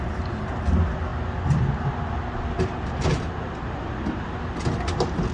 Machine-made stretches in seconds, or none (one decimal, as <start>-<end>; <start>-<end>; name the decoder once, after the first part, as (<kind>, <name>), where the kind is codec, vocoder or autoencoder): none